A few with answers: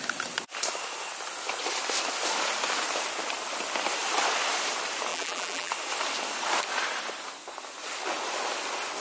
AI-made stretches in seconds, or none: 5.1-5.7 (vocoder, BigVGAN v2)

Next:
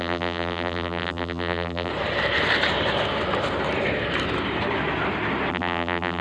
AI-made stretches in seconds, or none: 0.0-1.9 (vocoder, BigVGAN v2); 5.5-6.2

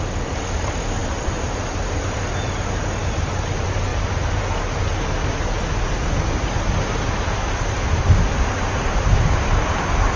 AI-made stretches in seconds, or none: 1.0-2.0 (vocoder, BigVGAN v2); 3.9-4.4

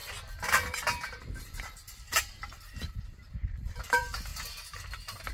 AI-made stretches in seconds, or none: 0.0-4.3 (vocoder, BigVGAN v2)

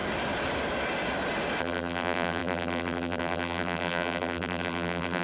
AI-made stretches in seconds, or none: 1.6-5.2 (vocoder, BigVGAN v2)

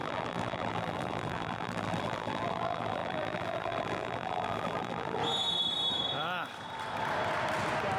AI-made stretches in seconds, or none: 0.0-5.2 (vocoder, BigVGAN v2)

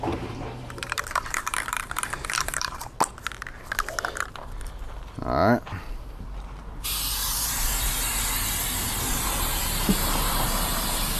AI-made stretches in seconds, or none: 0.0-2.8 (vocoder, BigVGAN v2); 5.9-8.1; 9.2-11.2

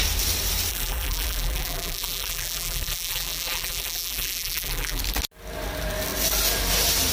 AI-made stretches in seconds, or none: 0.7-5.0 (vocoder, BigVGAN v2)